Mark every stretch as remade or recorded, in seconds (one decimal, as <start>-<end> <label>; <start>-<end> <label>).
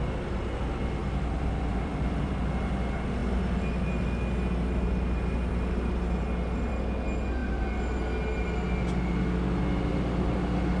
0.0-1.0 recorded; 1.0-2.4 remade; 2.4-10.8 recorded